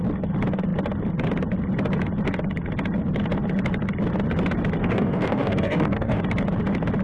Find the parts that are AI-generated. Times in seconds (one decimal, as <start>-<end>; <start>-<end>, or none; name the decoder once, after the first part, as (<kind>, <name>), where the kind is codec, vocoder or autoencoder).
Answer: 4.8-6.2 (codec, DAC)